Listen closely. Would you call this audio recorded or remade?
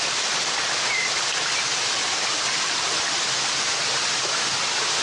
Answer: recorded